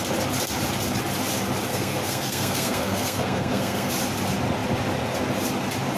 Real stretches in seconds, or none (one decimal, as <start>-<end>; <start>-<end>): 0.0-1.7; 3.9-6.0